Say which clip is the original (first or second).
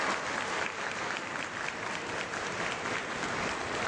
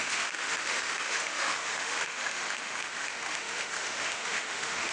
first